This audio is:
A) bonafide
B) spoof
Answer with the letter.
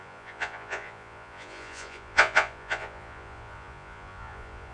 B